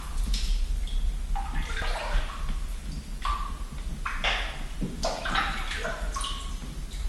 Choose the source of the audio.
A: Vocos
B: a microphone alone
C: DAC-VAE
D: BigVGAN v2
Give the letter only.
B